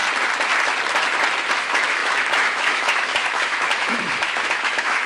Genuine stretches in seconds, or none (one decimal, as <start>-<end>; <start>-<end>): 0.0-1.6